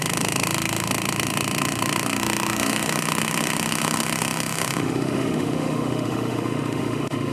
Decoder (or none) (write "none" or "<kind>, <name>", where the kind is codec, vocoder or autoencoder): autoencoder, DAC-VAE